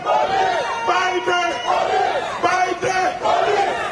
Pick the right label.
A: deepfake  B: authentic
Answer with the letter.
A